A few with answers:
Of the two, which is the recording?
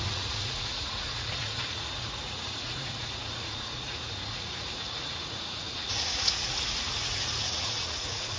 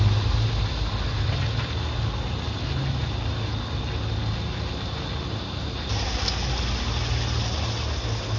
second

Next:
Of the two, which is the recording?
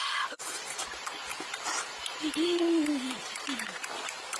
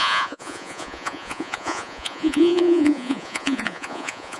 first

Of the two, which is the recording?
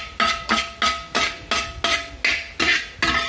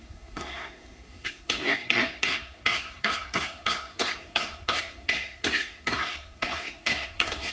first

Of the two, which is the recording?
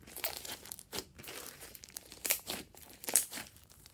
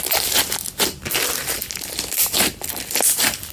second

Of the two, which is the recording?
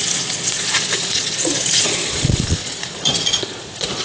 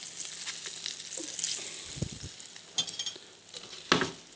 second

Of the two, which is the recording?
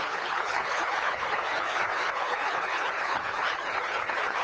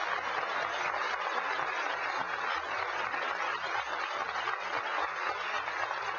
second